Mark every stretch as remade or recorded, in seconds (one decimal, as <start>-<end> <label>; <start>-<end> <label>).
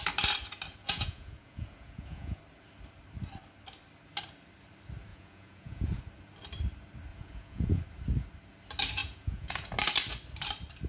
0.0-0.8 recorded; 0.8-2.4 remade; 2.4-5.1 recorded; 5.1-6.0 remade; 6.0-7.1 recorded; 7.1-7.8 remade; 7.8-9.0 recorded; 9.0-9.7 remade; 9.7-10.9 recorded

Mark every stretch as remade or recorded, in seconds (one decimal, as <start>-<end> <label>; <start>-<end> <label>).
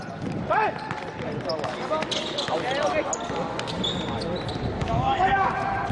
0.0-4.8 recorded; 4.8-5.5 remade; 5.5-5.9 recorded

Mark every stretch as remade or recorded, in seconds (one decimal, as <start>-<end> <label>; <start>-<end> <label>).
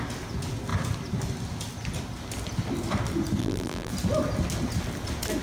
0.0-3.4 recorded; 3.4-3.9 remade; 3.9-5.4 recorded